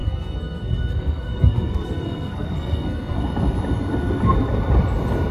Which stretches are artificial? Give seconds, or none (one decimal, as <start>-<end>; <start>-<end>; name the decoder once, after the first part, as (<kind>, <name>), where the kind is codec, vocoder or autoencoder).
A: 0.0-3.2 (codec, SNAC)